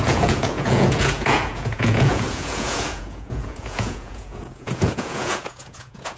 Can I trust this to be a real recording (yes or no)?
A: no